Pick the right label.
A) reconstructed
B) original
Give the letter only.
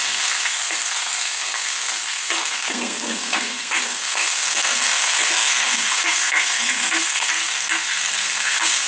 A